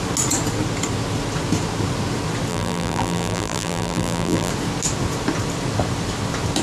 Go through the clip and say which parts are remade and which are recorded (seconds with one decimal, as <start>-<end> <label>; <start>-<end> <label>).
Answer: 0.0-2.5 recorded; 2.5-4.5 remade; 4.5-6.6 recorded